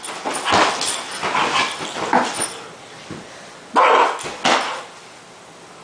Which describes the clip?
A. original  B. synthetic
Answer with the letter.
A